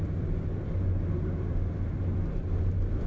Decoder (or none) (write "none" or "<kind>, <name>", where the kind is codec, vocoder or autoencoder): vocoder, BigVGAN v2